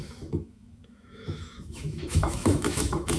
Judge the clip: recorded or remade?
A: remade